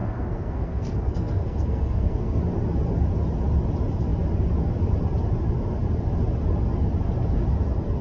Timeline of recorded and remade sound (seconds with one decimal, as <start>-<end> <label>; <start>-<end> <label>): 0.0-2.4 remade; 2.4-8.0 recorded